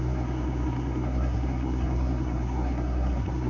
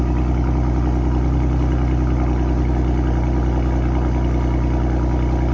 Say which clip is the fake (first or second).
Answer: first